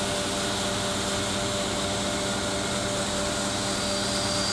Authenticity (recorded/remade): recorded